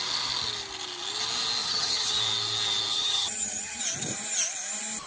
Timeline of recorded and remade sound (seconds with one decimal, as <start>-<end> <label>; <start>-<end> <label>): 0.0-1.6 recorded; 1.6-2.1 remade; 2.1-2.9 recorded; 2.9-3.8 remade; 3.8-5.1 recorded